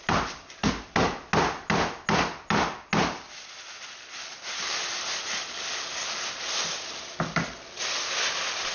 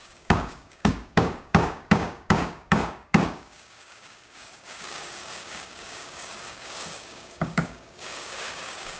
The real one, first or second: first